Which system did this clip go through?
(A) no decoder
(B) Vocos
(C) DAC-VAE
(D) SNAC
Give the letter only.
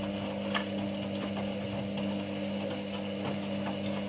A